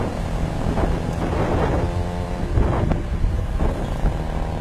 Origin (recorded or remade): recorded